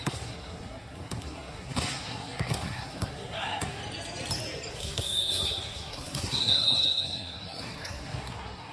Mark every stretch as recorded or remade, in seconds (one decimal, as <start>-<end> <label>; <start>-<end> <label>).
0.0-3.8 remade; 3.8-4.7 recorded; 4.7-8.7 remade